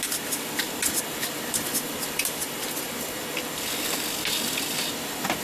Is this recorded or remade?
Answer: recorded